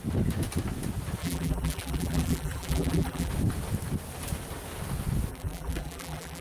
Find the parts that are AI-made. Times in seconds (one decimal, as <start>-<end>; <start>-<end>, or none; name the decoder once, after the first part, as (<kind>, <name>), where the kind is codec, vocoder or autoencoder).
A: 1.2-3.3 (vocoder, BigVGAN v2); 5.3-6.4